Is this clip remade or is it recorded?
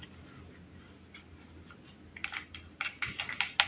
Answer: recorded